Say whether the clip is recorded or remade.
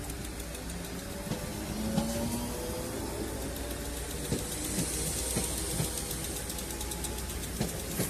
recorded